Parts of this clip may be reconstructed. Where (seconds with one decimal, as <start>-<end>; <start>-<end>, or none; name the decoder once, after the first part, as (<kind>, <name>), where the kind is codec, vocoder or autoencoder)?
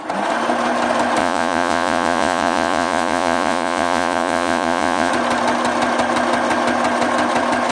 1.2-5.1 (vocoder, Vocos)